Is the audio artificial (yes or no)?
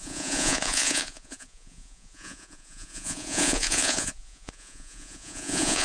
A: yes